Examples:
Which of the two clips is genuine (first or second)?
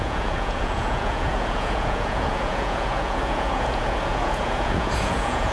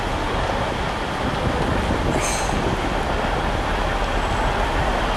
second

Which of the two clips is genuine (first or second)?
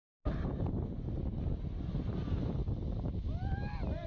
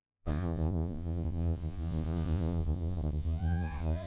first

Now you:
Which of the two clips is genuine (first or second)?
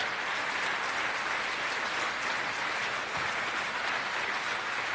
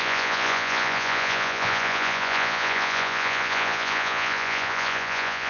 first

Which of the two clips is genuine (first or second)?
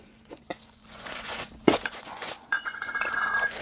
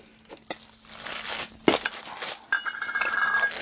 second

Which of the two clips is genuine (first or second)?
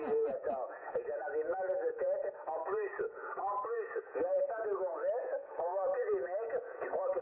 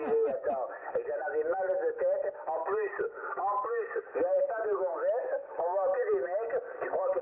second